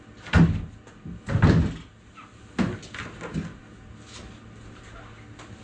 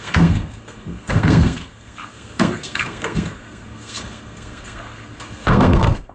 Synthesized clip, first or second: second